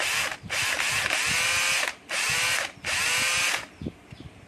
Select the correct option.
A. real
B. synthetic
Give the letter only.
A